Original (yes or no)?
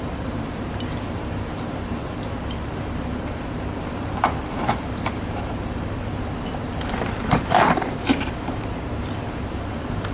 no